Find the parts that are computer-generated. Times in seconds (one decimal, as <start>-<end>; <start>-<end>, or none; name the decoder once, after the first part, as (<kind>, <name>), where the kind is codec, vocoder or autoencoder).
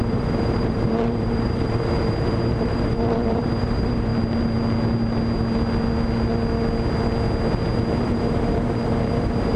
0.0-4.1 (vocoder, BigVGAN v2); 8.0-9.6